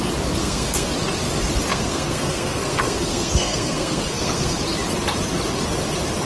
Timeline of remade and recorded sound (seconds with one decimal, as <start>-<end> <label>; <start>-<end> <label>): 0.0-0.4 recorded; 0.4-0.9 remade; 0.9-1.7 recorded; 1.7-4.6 remade; 4.6-6.3 recorded